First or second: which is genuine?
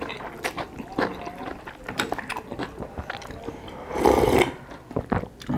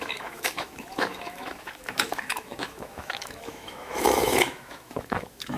first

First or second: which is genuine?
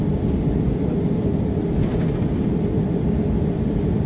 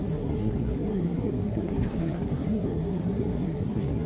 first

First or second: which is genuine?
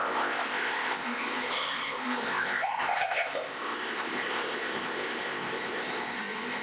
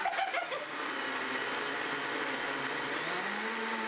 second